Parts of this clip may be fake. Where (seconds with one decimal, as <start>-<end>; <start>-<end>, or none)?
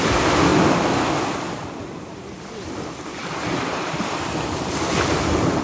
0.5-1.1; 1.6-2.7; 3.2-4.7